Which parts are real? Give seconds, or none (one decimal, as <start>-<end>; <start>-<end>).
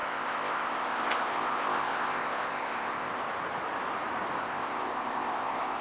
3.1-4.4